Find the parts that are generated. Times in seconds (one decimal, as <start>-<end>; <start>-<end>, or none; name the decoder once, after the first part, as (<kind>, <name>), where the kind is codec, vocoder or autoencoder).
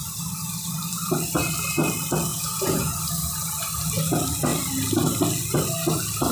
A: 2.3-3.0 (vocoder, Vocos)